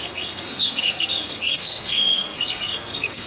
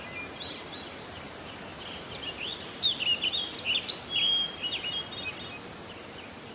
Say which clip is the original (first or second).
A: second